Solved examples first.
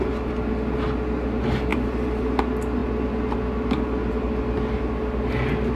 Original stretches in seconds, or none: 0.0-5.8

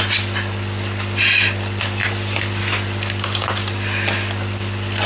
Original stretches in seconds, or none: 0.0-5.1

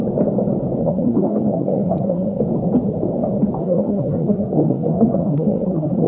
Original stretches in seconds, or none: 0.0-0.8; 2.4-3.6